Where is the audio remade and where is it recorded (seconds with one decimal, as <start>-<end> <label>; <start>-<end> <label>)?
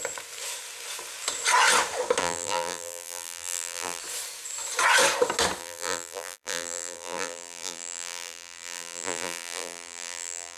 0.0-2.2 recorded; 2.2-4.0 remade; 4.0-5.6 recorded; 5.6-10.6 remade